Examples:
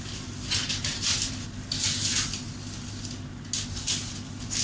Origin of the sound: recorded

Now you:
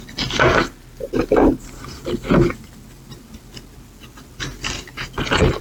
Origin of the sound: recorded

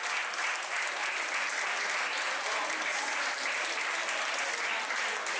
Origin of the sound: recorded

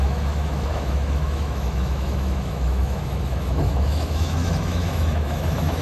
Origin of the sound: remade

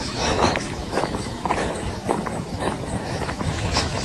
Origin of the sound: remade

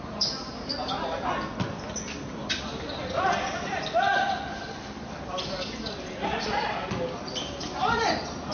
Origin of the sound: recorded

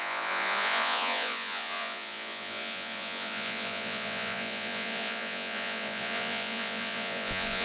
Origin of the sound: remade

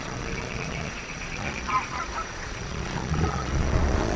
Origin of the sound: remade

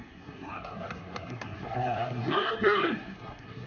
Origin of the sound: remade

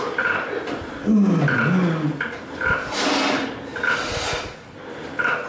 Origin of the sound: recorded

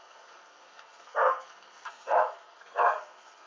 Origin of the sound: remade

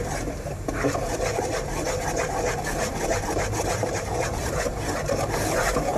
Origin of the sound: remade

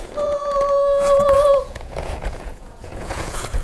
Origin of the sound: remade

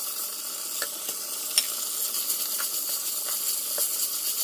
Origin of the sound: recorded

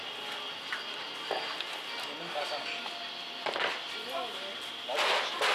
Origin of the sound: recorded